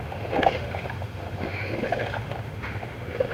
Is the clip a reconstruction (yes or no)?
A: yes